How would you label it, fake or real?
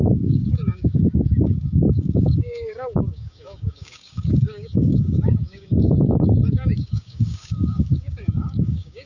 fake